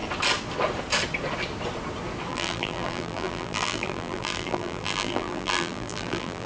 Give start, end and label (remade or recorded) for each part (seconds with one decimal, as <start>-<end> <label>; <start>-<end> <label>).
0.0-2.3 recorded; 2.3-6.5 remade